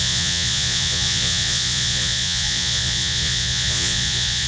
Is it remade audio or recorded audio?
remade